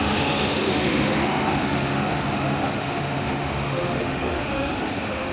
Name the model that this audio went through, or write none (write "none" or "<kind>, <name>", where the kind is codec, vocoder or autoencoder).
autoencoder, DAC-VAE